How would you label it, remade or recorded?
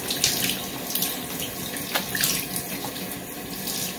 recorded